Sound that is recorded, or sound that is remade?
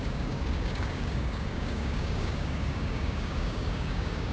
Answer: remade